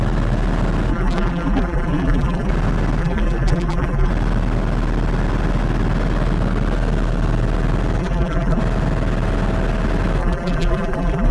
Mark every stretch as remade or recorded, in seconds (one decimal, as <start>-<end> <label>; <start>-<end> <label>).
0.0-0.9 recorded; 0.9-2.5 remade; 2.5-3.0 recorded; 3.0-4.1 remade; 4.1-8.0 recorded; 8.0-8.6 remade; 8.6-10.2 recorded; 10.2-11.3 remade